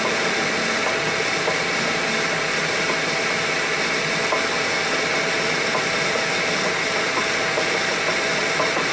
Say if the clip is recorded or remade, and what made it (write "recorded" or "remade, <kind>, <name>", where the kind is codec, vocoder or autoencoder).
recorded